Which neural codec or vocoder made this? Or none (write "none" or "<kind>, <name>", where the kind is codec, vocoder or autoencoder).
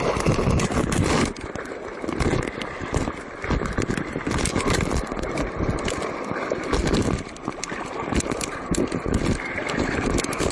none